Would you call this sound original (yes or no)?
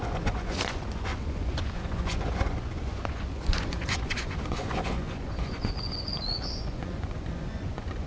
no